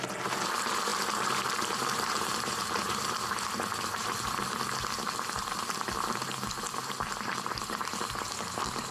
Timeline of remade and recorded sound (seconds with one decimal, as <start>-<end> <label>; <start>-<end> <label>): 0.0-0.9 recorded; 0.9-3.3 remade; 3.3-8.9 recorded